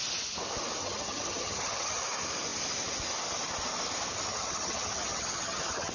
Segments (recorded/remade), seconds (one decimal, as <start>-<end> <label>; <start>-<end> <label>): 0.0-0.8 recorded; 0.8-2.0 remade; 2.0-4.3 recorded; 4.3-5.9 remade